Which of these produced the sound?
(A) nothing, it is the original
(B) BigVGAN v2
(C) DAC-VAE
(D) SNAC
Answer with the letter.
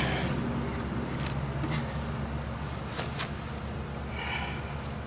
A